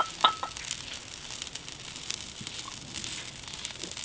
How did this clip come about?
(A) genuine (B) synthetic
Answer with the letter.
A